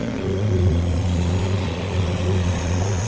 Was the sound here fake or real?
fake